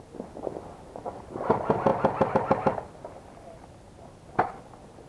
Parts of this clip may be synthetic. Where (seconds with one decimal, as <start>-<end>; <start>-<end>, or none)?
none